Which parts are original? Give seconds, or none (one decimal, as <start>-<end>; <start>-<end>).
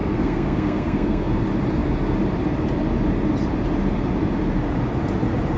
1.4-5.6